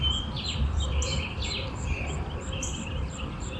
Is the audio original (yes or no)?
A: no